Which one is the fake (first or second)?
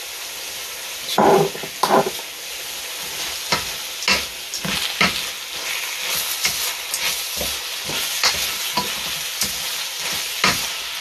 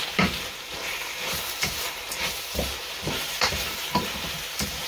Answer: second